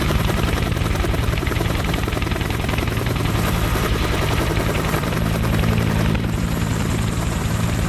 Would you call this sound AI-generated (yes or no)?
yes